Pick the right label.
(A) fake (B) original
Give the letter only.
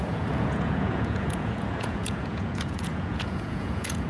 A